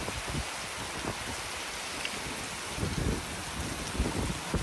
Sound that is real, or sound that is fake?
real